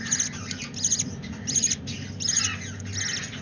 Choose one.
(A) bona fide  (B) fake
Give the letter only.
A